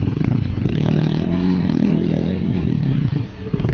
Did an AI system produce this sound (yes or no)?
yes